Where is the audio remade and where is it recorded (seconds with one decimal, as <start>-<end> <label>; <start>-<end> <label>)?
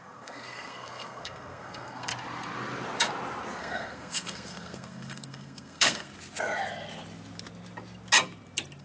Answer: 0.0-2.1 remade; 2.1-3.6 recorded; 3.6-6.1 remade; 6.1-8.8 recorded